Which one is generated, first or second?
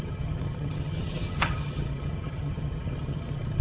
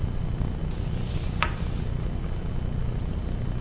first